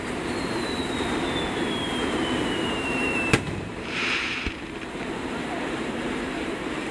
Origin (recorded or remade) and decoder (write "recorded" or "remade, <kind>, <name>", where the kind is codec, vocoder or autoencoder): remade, vocoder, BigVGAN v2